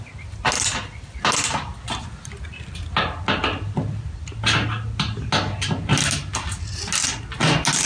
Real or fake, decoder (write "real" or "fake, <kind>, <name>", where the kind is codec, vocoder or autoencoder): real